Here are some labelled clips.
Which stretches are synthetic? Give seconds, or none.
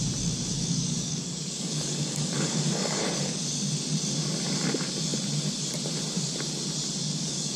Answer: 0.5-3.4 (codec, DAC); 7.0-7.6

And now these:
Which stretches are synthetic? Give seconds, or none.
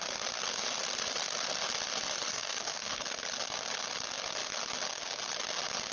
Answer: 2.3-3.0 (codec, DAC)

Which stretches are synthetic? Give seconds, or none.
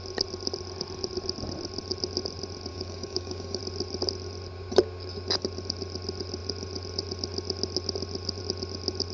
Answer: 2.7-3.6 (codec, DAC)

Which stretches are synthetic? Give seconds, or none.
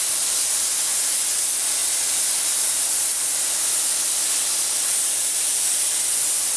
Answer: none